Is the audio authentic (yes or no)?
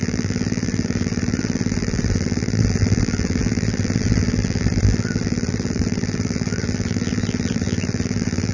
no